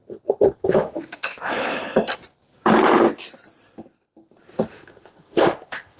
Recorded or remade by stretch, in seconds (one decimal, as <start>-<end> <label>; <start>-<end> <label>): 0.0-0.6 recorded; 0.6-1.5 remade; 1.5-4.7 recorded; 4.7-6.0 remade